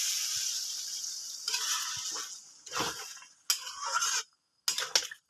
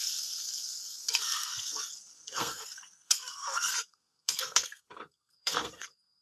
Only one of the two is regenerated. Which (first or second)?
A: second